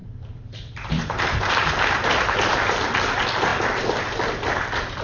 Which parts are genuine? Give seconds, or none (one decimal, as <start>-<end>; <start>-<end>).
3.0-5.0